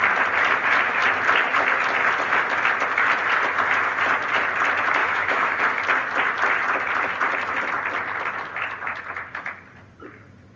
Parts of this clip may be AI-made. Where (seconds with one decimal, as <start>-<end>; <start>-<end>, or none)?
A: 5.0-5.6